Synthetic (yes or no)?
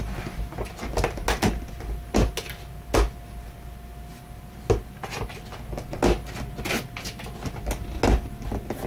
no